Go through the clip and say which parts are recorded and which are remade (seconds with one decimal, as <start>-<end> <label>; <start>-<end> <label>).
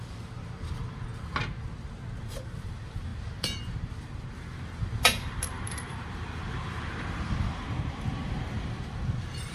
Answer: 0.0-1.1 remade; 1.1-2.2 recorded; 2.2-9.5 remade